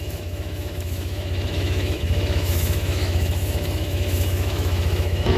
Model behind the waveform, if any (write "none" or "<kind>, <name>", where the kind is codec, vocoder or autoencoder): autoencoder, DAC-VAE